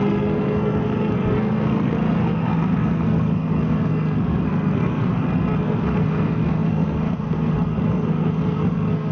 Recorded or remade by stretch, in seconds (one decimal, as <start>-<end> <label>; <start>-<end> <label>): 0.0-9.1 remade